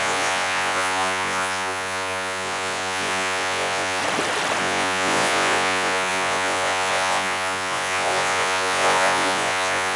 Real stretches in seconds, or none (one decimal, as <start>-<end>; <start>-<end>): 4.0-4.6